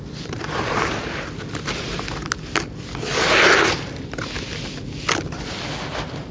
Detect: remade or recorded recorded